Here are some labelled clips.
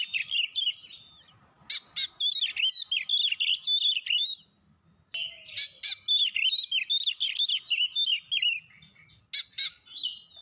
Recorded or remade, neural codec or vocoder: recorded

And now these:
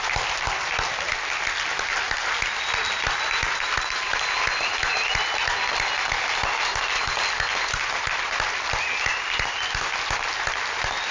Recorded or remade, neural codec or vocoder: recorded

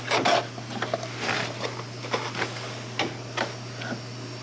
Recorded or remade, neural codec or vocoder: recorded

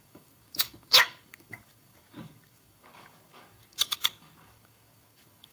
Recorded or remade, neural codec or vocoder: remade, codec, DAC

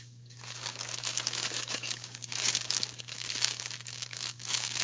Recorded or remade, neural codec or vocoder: remade, codec, DAC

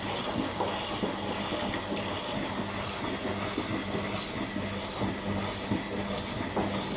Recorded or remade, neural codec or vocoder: recorded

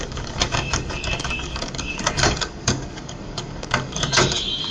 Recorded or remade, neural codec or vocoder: remade, codec, DAC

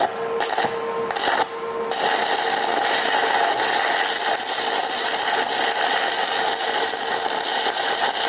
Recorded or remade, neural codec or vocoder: recorded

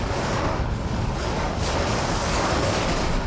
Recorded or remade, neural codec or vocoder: remade, codec, DAC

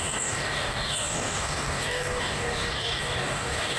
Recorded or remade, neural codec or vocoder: remade, codec, DAC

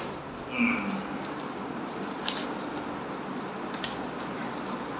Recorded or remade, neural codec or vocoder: recorded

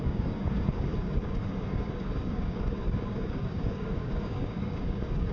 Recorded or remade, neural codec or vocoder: remade, codec, DAC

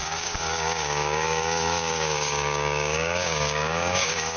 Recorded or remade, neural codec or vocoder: remade, codec, DAC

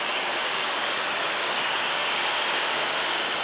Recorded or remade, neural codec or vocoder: remade, codec, DAC